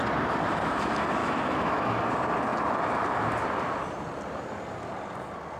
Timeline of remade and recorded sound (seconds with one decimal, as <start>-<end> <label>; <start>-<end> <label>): 0.0-1.2 recorded; 1.2-2.0 remade; 2.0-5.6 recorded